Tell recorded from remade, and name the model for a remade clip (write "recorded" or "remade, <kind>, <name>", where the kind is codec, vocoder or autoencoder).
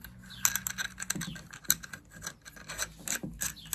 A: recorded